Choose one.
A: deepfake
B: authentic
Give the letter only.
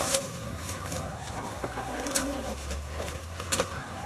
A